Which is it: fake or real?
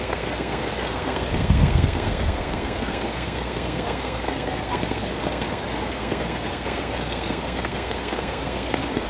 fake